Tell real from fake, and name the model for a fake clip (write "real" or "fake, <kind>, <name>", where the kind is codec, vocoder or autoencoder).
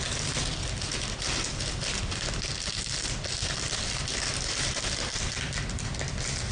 real